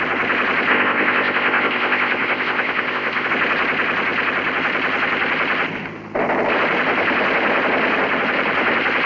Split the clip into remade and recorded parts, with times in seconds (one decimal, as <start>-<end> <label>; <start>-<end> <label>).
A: 0.0-0.7 recorded; 0.7-3.3 remade; 3.3-9.1 recorded